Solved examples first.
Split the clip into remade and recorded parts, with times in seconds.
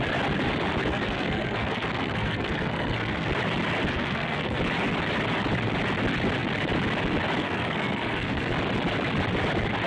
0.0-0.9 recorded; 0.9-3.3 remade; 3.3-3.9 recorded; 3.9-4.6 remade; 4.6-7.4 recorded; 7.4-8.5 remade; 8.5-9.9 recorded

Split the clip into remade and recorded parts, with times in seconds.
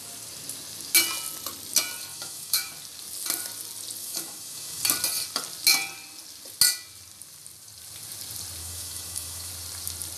0.0-2.1 recorded; 2.1-2.7 remade; 2.7-4.0 recorded; 4.0-4.8 remade; 4.8-8.6 recorded; 8.6-9.5 remade; 9.5-10.2 recorded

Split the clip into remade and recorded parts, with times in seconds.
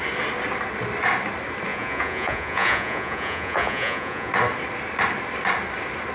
0.0-1.7 recorded; 1.7-4.3 remade; 4.3-6.1 recorded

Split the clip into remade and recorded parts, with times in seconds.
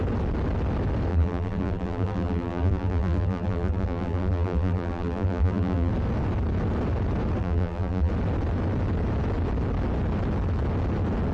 0.0-1.1 recorded; 1.1-5.9 remade; 5.9-7.4 recorded; 7.4-8.1 remade; 8.1-11.3 recorded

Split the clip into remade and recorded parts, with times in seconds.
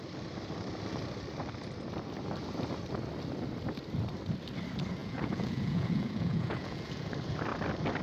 0.0-5.0 recorded; 5.0-7.1 remade; 7.1-8.0 recorded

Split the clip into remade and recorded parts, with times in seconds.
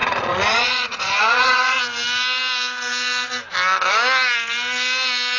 0.0-1.8 remade; 1.8-5.4 recorded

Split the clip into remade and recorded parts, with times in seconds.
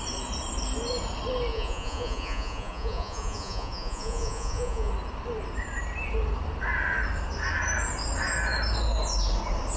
0.0-1.5 recorded; 1.5-4.9 remade; 4.9-9.8 recorded